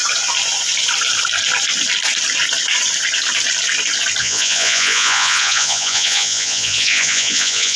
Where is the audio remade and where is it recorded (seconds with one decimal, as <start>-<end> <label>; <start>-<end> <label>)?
0.0-4.2 recorded; 4.2-7.8 remade